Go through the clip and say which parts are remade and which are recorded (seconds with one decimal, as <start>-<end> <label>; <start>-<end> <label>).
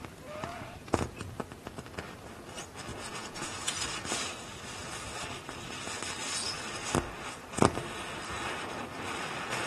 0.0-0.5 recorded; 0.5-1.3 remade; 1.3-2.9 recorded; 2.9-3.7 remade; 3.7-9.7 recorded